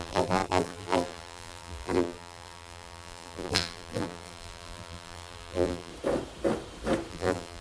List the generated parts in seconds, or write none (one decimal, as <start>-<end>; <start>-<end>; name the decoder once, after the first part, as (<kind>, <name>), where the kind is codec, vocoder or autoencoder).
0.0-5.9 (vocoder, BigVGAN v2); 7.1-7.6